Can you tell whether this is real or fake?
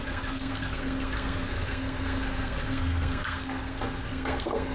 fake